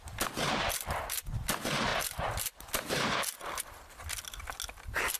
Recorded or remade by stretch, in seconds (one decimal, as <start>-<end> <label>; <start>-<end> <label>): 0.0-5.2 recorded